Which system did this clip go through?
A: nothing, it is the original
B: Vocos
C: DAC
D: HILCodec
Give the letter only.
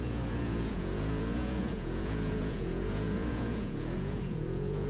B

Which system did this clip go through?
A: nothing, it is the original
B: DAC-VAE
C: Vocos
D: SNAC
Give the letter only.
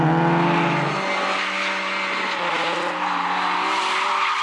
A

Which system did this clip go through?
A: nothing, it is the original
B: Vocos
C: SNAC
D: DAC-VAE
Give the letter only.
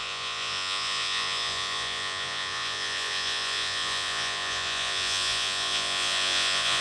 B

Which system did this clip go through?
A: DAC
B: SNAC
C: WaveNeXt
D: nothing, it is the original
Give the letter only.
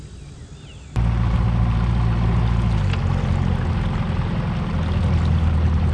D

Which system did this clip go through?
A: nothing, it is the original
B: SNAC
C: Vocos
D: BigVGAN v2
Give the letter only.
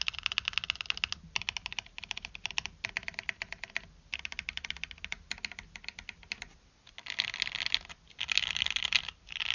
A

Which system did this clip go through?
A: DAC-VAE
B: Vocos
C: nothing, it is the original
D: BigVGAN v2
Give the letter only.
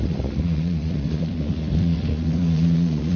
B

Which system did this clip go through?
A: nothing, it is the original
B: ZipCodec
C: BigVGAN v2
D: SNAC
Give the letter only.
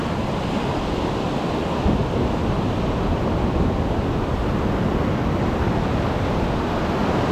A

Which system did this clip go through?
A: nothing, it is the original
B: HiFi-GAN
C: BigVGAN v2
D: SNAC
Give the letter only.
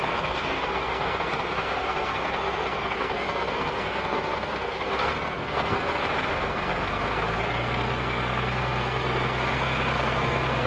D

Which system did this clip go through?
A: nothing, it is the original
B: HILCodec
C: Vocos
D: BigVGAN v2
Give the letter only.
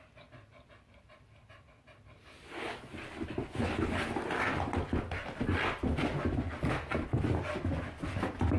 A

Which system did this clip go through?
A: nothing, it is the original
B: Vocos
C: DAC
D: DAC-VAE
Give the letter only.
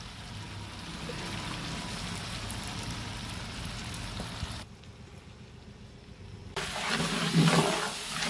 A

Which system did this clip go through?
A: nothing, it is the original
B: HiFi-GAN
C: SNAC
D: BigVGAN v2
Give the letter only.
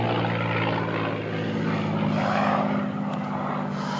A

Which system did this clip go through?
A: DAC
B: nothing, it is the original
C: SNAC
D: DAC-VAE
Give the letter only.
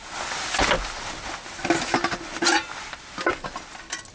B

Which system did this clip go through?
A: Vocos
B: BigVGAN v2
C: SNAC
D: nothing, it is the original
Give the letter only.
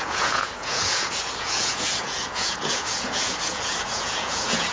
A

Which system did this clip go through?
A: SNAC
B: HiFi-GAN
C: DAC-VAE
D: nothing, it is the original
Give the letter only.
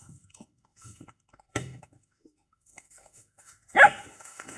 C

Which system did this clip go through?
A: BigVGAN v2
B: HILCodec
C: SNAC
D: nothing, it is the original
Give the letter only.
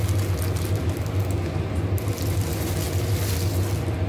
D